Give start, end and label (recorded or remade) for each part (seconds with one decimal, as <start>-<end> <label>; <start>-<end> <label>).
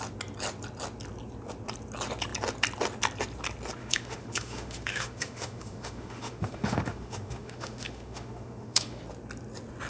0.0-3.8 recorded; 3.8-9.0 remade; 9.0-9.9 recorded